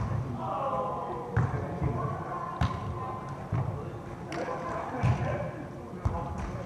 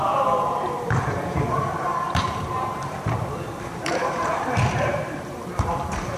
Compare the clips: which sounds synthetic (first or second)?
second